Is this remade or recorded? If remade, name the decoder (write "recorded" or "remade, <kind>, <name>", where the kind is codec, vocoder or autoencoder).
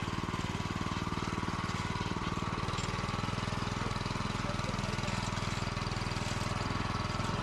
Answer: recorded